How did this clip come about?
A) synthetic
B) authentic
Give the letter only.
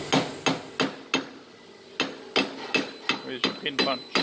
B